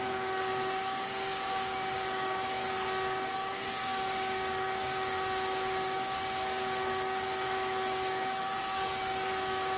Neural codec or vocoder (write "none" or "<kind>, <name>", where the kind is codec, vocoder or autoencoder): codec, DAC